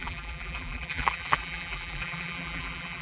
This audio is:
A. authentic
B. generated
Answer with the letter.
B